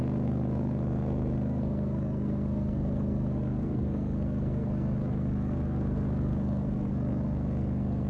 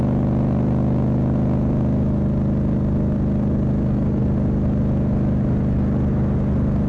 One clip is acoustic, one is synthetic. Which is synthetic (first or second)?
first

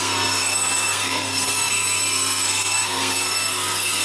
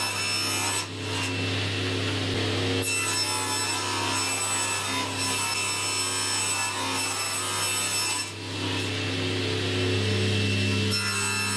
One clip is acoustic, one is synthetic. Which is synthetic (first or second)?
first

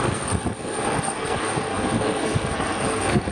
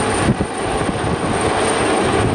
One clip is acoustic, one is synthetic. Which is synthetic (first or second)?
first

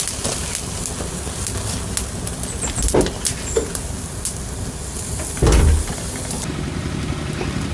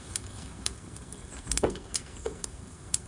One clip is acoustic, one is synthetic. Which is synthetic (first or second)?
second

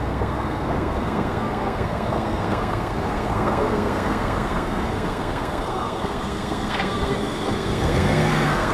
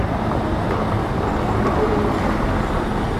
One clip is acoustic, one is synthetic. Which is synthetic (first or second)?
first